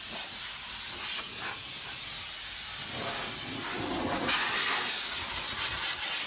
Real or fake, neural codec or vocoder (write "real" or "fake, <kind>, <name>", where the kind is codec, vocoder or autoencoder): real